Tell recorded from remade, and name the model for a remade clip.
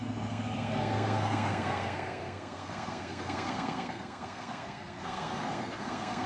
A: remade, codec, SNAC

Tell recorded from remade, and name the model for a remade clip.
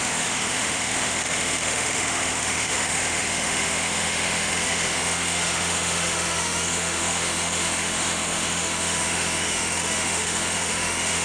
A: remade, autoencoder, DAC-VAE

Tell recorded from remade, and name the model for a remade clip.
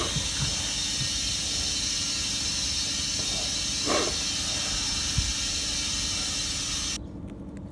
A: recorded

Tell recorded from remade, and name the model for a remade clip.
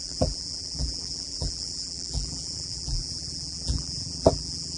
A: remade, vocoder, BigVGAN v2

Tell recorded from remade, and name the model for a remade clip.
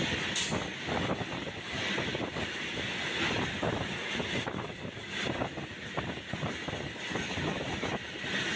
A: recorded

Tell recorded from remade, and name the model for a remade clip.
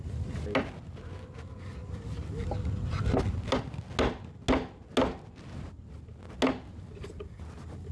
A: recorded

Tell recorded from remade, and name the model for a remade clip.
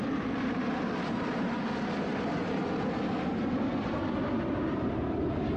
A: recorded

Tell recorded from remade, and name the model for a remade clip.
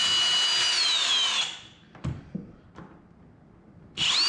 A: recorded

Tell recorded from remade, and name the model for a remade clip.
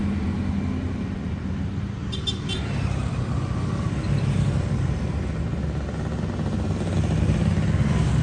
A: recorded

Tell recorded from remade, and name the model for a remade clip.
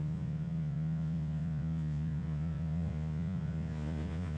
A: remade, vocoder, Vocos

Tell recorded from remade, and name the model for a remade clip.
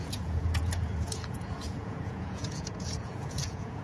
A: remade, vocoder, Vocos